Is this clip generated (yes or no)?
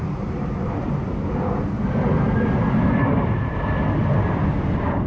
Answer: no